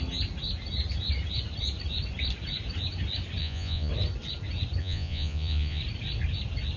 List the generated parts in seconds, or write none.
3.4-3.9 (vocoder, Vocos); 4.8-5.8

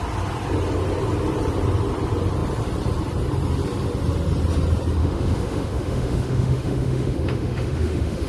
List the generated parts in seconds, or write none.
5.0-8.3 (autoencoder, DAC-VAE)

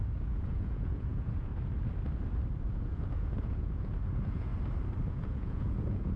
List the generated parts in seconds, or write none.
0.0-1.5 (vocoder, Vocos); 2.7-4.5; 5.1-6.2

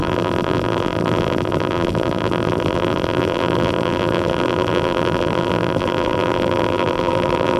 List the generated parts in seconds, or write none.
0.0-7.6 (vocoder, BigVGAN v2)

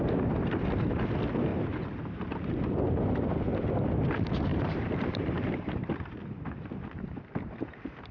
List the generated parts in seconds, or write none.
1.5-3.0 (vocoder, BigVGAN v2); 4.5-5.9